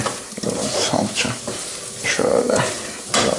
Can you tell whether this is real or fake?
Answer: fake